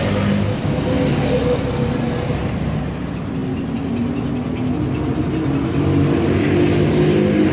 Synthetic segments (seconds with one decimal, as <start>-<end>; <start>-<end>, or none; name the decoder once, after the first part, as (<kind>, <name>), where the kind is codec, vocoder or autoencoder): none